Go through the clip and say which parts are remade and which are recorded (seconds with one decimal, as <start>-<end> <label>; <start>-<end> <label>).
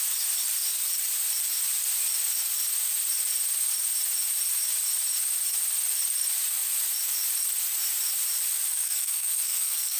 0.0-8.7 recorded; 8.7-10.0 remade